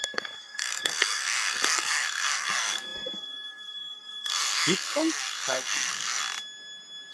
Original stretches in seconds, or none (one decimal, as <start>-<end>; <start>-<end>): 6.2-7.1